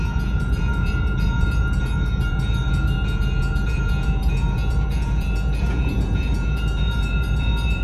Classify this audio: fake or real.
fake